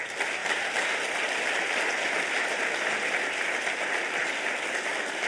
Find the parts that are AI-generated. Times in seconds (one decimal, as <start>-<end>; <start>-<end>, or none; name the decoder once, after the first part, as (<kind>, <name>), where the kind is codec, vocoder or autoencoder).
none